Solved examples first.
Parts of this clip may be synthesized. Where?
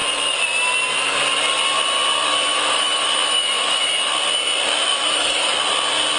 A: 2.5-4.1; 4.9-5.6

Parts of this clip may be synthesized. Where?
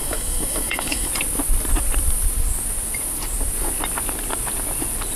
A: 0.0-1.1